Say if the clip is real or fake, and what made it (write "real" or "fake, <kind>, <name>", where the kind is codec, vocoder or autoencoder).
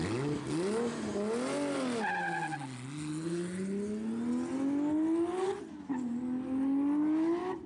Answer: real